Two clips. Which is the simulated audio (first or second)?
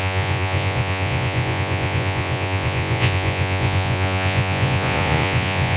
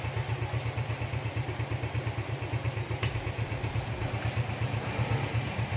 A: first